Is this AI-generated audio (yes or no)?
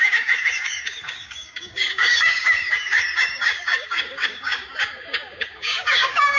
yes